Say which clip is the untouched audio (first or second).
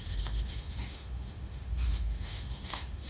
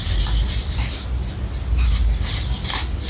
second